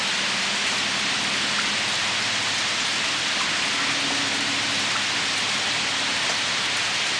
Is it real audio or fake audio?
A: real